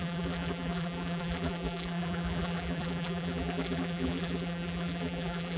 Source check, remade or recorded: remade